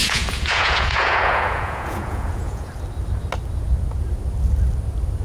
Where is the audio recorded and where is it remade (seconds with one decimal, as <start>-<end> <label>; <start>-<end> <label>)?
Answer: 0.0-2.7 remade; 2.7-5.2 recorded